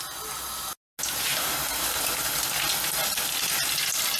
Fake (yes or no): no